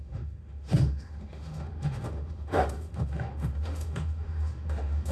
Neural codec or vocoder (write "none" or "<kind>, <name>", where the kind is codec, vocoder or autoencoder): autoencoder, DAC-VAE